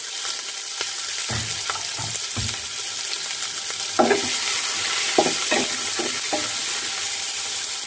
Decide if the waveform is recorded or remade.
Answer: recorded